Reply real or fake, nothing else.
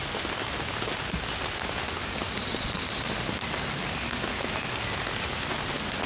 real